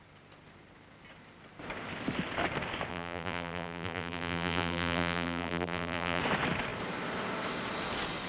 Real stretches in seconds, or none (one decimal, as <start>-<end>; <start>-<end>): 0.0-2.9; 6.2-8.3